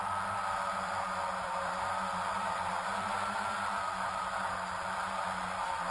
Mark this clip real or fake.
fake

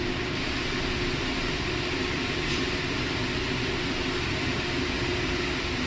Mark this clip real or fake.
fake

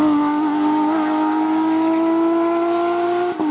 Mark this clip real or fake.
real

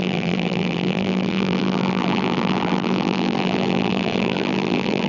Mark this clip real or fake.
fake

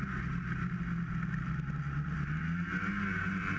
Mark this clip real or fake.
real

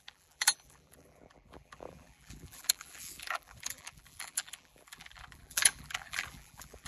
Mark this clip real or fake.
fake